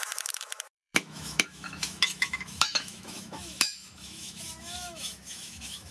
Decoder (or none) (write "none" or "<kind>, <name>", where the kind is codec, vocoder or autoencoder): autoencoder, DAC-VAE